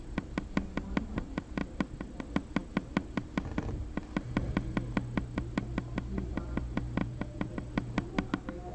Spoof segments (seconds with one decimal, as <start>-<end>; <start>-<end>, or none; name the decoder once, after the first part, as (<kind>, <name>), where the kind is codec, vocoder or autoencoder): 7.0-7.5 (vocoder, Vocos)

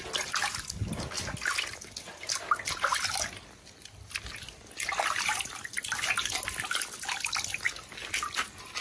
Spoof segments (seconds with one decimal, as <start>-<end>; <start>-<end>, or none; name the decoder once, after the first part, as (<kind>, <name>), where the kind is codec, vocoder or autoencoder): none